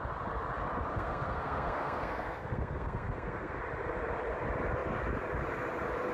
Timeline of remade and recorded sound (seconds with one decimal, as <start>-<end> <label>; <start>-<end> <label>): 0.0-0.9 recorded; 0.9-3.6 remade; 3.6-6.1 recorded